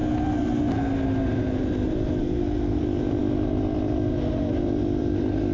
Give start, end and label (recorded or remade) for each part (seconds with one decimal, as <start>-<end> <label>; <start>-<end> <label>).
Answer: 0.0-2.2 recorded; 2.2-2.8 remade; 2.8-5.5 recorded